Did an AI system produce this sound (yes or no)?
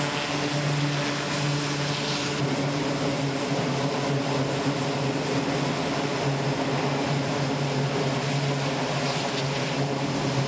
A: no